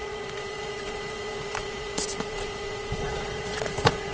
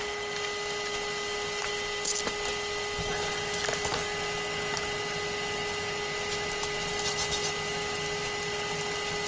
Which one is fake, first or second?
first